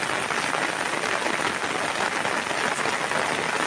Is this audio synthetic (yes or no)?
no